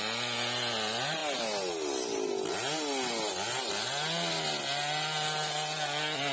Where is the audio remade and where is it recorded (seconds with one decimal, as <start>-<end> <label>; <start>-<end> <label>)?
0.0-6.3 recorded